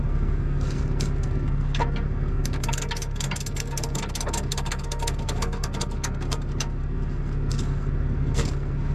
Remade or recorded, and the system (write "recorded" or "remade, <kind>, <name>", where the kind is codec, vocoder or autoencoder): remade, codec, SNAC